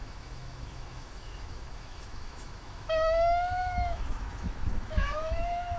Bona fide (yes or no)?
no